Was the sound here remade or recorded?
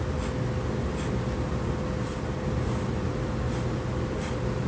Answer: recorded